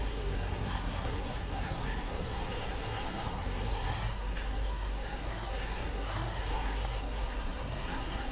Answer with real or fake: fake